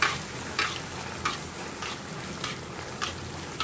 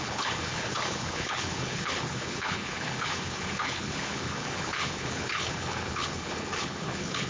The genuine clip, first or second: first